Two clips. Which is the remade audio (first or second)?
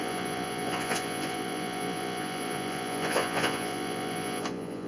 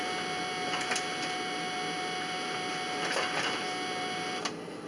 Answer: first